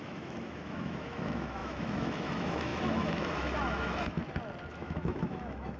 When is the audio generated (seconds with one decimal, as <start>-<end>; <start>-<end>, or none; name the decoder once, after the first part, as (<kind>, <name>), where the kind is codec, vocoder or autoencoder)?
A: 0.0-4.2 (autoencoder, DAC-VAE); 4.7-5.8